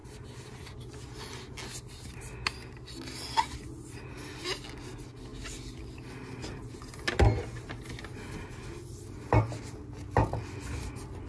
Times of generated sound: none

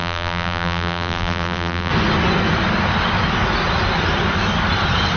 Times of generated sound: 0.0-1.9

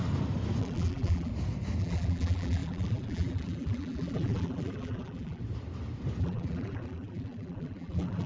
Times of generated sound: 0.6-1.3; 1.8-5.4; 6.2-8.3

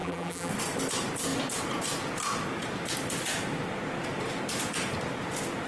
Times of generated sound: 0.0-0.5

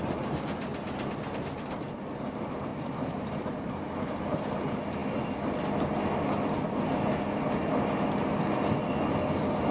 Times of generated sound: 2.7-4.2

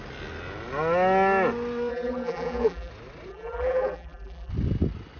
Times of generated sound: 1.9-2.9; 3.3-4.5

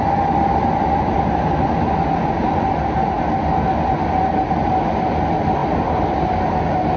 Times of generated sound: none

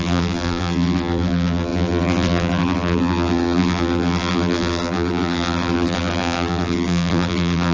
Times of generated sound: 0.0-7.7